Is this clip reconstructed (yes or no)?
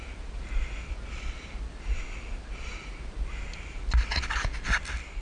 no